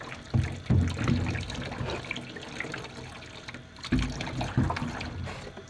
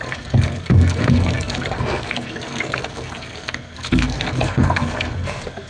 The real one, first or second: first